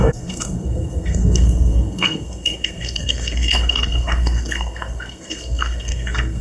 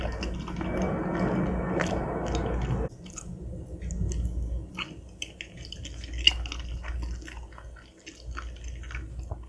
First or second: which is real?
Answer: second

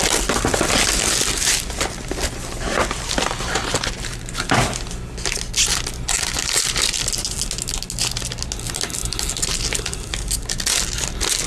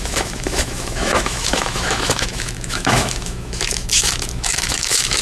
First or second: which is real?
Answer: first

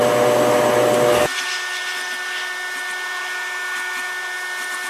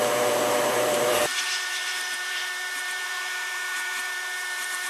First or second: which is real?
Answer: first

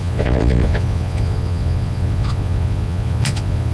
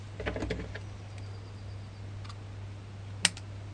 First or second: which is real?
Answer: second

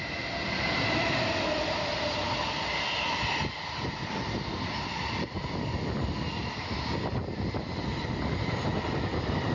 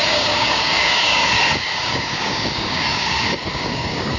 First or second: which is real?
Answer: first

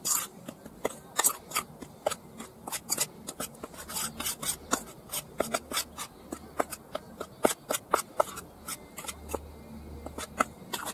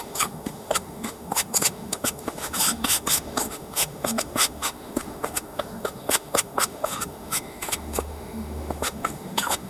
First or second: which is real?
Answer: first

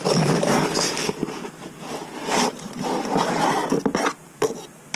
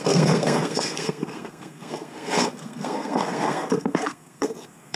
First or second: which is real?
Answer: first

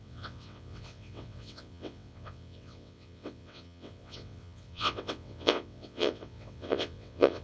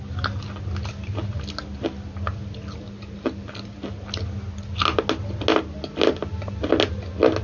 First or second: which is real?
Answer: second